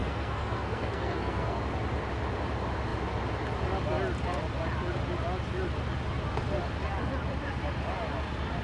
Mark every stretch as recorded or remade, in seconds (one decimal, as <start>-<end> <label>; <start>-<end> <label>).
0.0-1.6 remade; 1.6-8.6 recorded